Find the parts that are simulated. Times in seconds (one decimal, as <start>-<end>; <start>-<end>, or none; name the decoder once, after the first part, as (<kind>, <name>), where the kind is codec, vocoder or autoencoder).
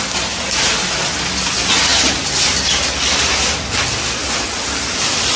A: none